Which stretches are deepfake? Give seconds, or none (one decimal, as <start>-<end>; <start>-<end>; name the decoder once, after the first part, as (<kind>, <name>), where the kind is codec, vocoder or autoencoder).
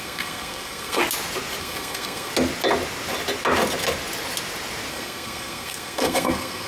0.0-1.0 (codec, SNAC); 1.6-2.3; 4.9-6.7